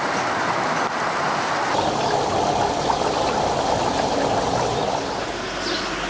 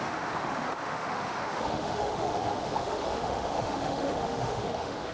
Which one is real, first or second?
first